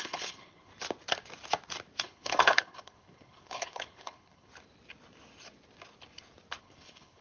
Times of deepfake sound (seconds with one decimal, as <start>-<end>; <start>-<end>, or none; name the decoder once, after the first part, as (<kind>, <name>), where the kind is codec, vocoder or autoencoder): 0.0-0.7 (codec, HILCodec); 2.0-4.5; 6.6-7.2